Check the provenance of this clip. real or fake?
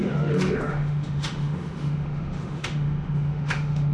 fake